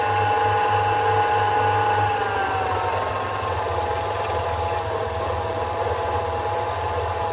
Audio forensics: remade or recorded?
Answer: recorded